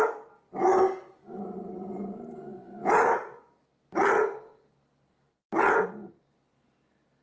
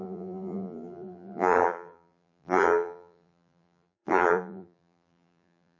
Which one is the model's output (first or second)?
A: second